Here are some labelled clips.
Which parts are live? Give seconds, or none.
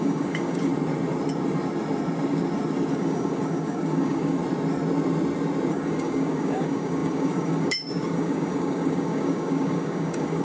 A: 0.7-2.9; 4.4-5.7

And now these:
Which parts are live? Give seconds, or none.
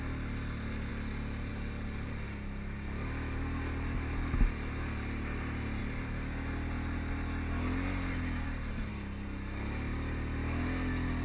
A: 0.0-11.2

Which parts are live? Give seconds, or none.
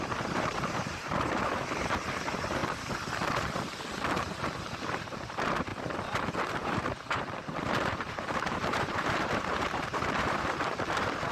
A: 2.6-4.9; 5.7-6.5